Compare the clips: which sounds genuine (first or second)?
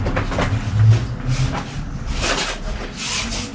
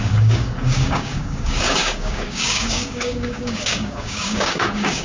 first